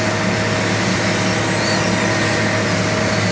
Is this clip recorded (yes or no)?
yes